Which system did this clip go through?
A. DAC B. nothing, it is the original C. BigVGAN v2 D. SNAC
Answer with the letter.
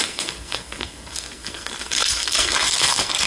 D